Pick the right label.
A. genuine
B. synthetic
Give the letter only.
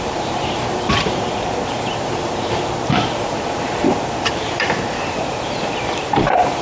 B